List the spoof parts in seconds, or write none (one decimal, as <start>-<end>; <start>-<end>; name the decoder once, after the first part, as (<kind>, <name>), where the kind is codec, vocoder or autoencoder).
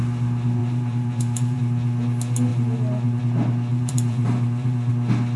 0.6-1.6 (vocoder, BigVGAN v2); 2.5-3.2; 3.7-4.9